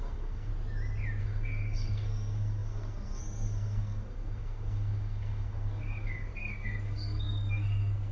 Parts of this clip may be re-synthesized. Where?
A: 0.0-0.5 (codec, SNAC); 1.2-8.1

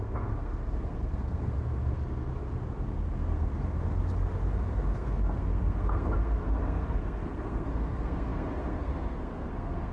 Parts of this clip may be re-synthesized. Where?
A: 0.0-2.3 (codec, SNAC); 2.9-3.9; 4.5-9.9

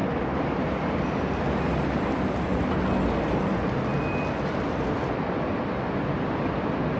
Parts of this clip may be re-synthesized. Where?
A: none